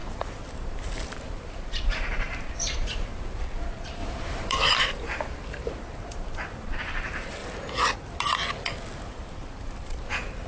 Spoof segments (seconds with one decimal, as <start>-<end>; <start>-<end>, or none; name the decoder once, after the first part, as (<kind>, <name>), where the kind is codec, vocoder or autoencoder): 0.0-7.4 (vocoder, BigVGAN v2); 9.1-10.5